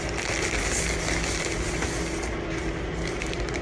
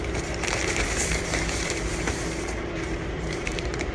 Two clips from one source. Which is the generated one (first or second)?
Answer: second